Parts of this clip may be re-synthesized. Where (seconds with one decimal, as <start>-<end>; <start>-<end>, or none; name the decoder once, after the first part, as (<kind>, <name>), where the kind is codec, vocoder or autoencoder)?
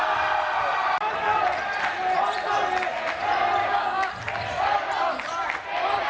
3.6-4.1 (codec, DAC)